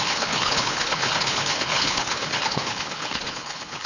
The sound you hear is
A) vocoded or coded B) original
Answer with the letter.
A